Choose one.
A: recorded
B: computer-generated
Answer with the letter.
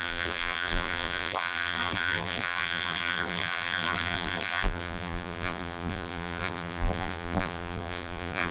B